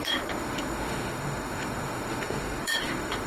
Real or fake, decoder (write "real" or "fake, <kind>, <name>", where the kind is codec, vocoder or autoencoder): fake, autoencoder, DAC-VAE